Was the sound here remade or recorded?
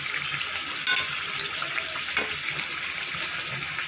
recorded